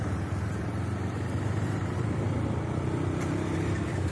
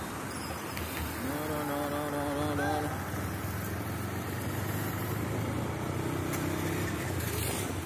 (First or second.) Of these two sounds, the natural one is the second